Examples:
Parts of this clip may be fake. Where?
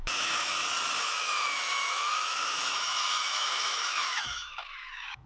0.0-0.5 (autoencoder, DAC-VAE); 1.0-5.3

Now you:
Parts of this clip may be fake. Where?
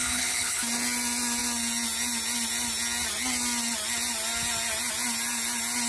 0.0-0.6 (codec, HILCodec)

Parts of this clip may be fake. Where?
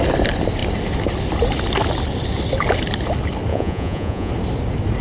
3.5-4.3 (vocoder, Vocos)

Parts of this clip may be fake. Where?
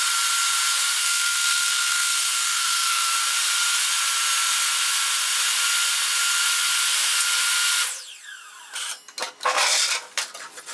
1.0-3.1 (codec, SNAC)